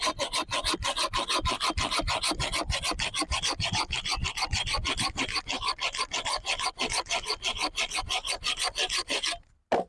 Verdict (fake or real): real